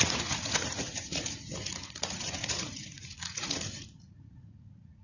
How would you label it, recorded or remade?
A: remade